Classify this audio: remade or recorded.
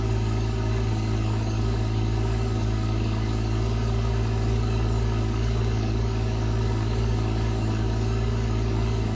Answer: remade